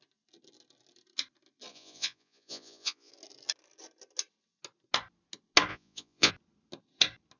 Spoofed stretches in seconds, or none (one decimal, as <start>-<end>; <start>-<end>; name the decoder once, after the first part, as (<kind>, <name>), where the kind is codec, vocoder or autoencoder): 1.7-3.1 (vocoder, Vocos); 5.7-6.3